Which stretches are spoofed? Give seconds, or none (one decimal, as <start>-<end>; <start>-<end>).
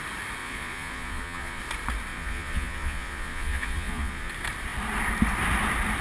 0.4-1.6; 2.1-4.3